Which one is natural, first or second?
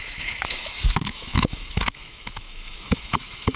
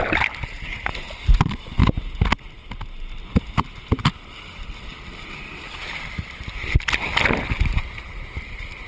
second